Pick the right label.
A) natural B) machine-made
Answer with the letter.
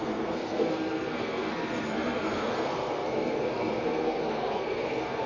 B